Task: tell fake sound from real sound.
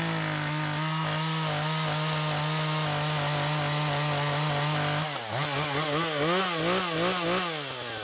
real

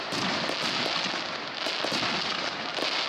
real